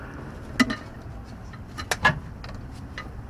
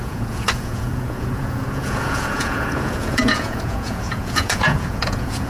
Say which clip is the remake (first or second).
second